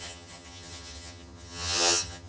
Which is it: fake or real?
fake